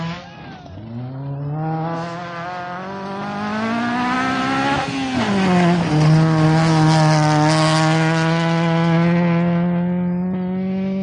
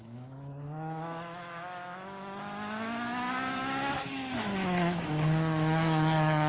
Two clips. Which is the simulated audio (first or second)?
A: second